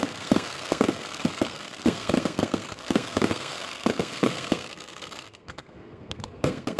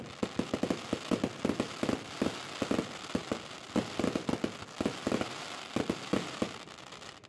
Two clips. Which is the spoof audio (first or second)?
first